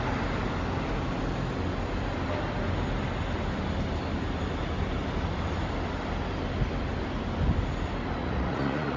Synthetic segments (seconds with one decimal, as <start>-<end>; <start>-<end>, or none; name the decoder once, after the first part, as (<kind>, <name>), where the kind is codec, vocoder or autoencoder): 8.2-9.0 (vocoder, Vocos)